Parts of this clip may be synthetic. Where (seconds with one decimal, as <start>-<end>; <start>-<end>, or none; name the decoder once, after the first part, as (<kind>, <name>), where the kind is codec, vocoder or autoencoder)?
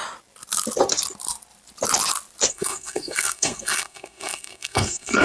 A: 2.5-5.2 (codec, SNAC)